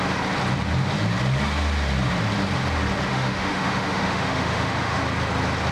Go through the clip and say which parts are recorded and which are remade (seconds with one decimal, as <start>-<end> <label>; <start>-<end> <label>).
0.0-3.1 recorded; 3.1-5.0 remade; 5.0-5.7 recorded